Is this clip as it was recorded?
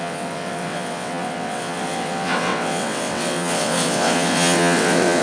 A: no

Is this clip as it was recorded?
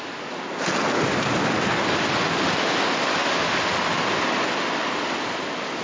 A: yes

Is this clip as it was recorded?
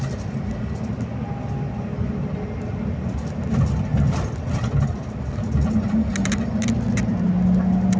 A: yes